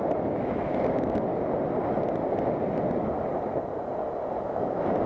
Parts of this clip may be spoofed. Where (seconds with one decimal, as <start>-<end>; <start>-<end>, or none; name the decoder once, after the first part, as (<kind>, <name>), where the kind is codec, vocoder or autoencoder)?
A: 0.0-1.3 (autoencoder, DAC-VAE); 4.4-5.1